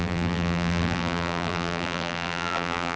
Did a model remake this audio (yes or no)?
yes